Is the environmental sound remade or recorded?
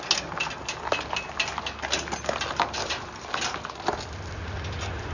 recorded